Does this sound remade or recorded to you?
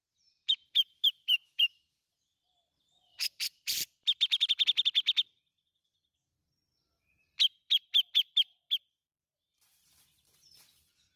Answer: remade